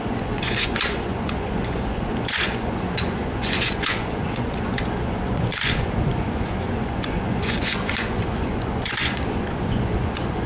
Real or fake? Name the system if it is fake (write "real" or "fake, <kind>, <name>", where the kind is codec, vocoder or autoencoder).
fake, vocoder, Vocos